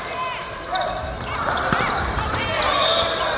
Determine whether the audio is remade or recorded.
recorded